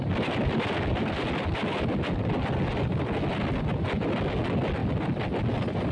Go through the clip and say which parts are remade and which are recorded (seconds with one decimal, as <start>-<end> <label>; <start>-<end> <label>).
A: 0.0-5.9 recorded